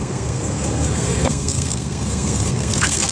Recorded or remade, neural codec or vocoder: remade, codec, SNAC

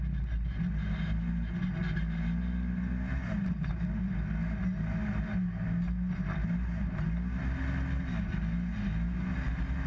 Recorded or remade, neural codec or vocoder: recorded